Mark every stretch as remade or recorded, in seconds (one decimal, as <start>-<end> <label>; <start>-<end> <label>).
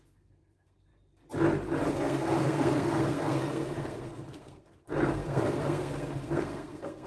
0.0-0.9 remade; 0.9-1.9 recorded; 1.9-7.1 remade